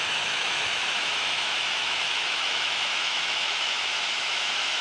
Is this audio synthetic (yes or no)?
yes